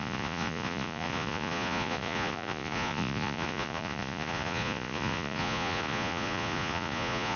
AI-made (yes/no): yes